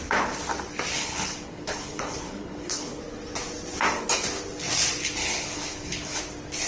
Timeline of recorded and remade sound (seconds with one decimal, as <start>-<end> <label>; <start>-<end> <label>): 0.0-0.9 recorded; 0.9-3.0 remade; 3.0-5.2 recorded; 5.2-6.2 remade; 6.2-6.7 recorded